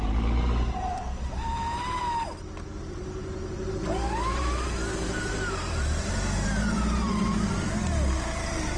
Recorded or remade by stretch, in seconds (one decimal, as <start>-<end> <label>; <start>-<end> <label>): 0.0-2.0 remade; 2.0-2.7 recorded; 2.7-8.8 remade